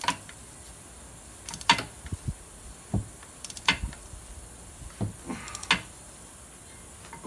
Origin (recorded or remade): recorded